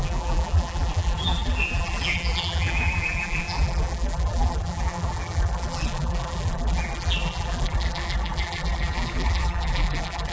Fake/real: fake